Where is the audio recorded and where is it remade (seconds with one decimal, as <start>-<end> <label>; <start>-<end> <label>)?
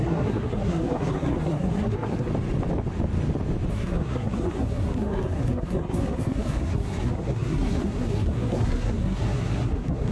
0.0-2.3 remade; 2.3-3.7 recorded; 3.7-10.1 remade